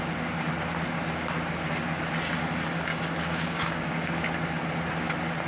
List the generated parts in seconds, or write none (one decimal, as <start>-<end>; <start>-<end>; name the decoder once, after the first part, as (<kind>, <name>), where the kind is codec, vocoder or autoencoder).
2.9-4.2 (codec, DAC)